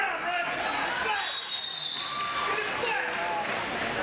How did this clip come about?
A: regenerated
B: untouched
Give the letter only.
B